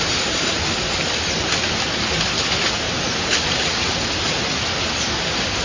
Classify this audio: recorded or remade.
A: recorded